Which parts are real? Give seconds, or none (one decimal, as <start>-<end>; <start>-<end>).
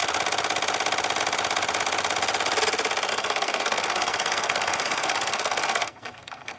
0.0-3.1